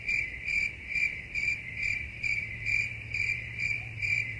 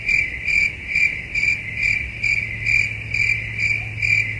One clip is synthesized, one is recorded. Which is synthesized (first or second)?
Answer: first